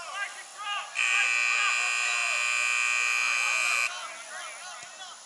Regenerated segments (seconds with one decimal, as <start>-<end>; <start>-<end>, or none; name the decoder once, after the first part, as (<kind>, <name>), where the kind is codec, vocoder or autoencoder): none